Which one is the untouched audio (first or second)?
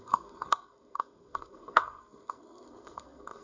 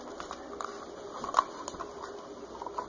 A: second